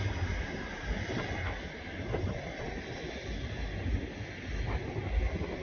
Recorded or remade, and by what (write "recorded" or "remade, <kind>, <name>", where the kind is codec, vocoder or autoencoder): recorded